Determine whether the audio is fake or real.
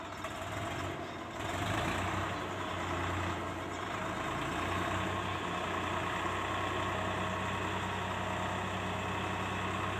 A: real